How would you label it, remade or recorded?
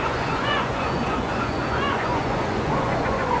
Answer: remade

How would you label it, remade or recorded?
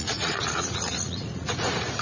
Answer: remade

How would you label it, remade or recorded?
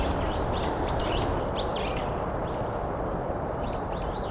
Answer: remade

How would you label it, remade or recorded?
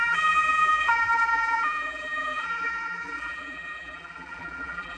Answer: remade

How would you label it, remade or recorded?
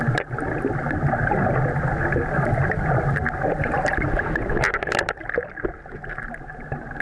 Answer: recorded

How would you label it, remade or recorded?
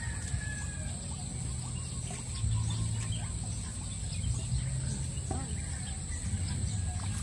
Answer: recorded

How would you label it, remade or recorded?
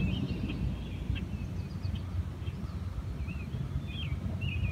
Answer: recorded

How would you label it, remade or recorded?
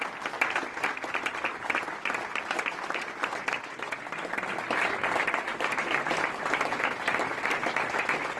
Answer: recorded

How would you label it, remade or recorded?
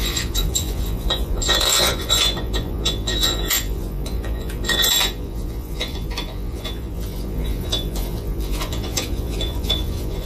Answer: remade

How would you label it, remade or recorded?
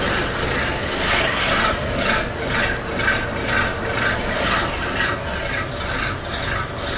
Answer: recorded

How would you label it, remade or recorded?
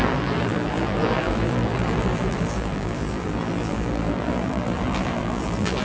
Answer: remade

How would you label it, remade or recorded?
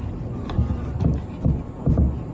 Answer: recorded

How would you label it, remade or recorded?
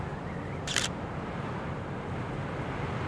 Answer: recorded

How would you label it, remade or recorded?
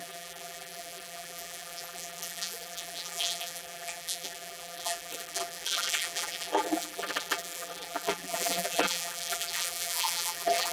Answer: remade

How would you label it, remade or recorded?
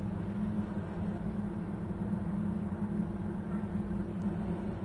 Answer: recorded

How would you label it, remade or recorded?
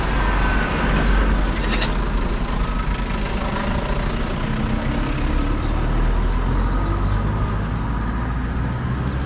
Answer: recorded